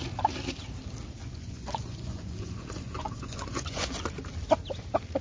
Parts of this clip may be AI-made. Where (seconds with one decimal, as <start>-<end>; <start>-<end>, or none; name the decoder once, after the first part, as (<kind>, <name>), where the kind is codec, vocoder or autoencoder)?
1.2-3.9 (vocoder, Vocos)

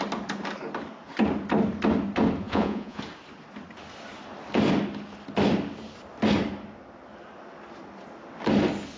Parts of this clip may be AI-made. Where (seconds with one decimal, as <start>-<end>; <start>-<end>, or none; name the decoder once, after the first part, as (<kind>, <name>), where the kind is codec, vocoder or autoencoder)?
2.4-3.0 (vocoder, Vocos)

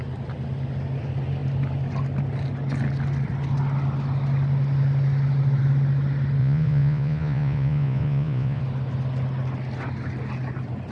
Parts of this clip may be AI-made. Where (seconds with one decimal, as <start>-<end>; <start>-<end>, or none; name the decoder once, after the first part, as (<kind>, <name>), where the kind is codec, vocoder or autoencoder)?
6.4-8.6 (vocoder, Vocos)

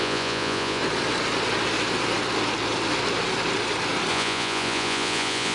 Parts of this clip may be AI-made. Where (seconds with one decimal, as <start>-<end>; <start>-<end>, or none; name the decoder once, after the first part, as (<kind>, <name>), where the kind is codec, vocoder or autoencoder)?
0.0-0.8 (vocoder, Vocos); 4.1-5.5

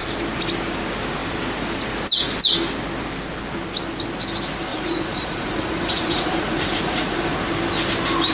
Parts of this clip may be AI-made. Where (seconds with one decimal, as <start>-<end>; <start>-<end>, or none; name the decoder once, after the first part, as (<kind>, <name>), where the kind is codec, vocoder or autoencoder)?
4.7-7.2 (vocoder, Vocos)

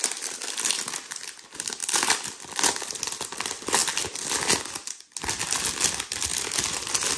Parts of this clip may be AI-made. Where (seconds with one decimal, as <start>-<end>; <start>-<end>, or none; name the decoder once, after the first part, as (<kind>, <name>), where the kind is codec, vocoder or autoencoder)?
none

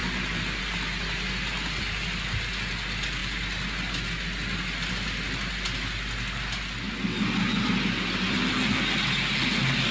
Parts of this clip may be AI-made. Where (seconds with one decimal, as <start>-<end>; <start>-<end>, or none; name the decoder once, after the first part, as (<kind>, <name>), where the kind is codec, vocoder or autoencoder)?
none

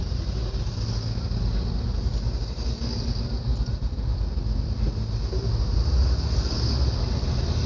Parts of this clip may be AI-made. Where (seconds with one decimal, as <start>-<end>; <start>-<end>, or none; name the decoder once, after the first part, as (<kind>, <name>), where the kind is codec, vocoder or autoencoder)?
none